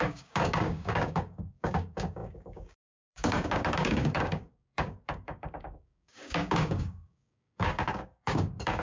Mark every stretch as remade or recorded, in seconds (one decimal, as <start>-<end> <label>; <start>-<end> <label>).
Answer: 0.0-8.8 remade